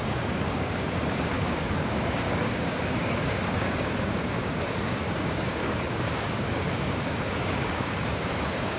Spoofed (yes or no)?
yes